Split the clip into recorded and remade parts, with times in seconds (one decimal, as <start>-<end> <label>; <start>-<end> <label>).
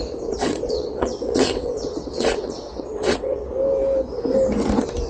0.0-0.4 recorded; 0.4-3.5 remade; 3.5-5.1 recorded